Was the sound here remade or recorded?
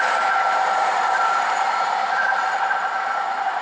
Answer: remade